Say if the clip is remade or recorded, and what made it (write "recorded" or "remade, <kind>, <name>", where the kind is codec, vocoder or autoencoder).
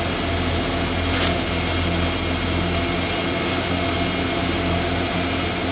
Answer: recorded